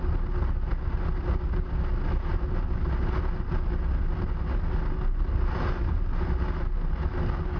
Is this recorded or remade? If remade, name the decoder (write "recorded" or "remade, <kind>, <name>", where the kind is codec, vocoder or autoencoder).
recorded